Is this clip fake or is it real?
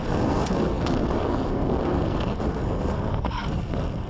fake